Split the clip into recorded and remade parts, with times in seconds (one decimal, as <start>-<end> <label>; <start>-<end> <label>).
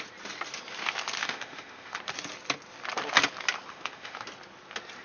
0.0-1.2 recorded; 1.2-2.0 remade; 2.0-3.7 recorded; 3.7-4.2 remade; 4.2-5.0 recorded